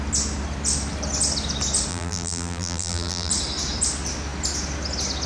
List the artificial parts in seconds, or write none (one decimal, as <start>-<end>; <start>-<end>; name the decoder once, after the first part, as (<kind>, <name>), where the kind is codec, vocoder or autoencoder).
1.9-3.3 (vocoder, BigVGAN v2)